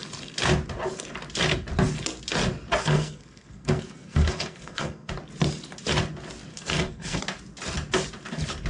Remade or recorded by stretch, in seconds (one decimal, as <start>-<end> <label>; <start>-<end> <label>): 0.0-2.8 recorded; 2.8-5.1 remade; 5.1-6.5 recorded; 6.5-7.2 remade; 7.2-8.7 recorded